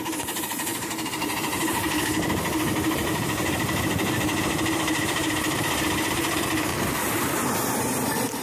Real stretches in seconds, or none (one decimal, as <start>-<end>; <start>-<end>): 6.7-7.6